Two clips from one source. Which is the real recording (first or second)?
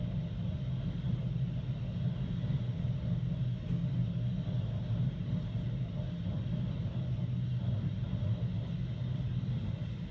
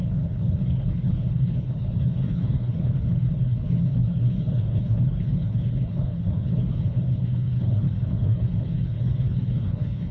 first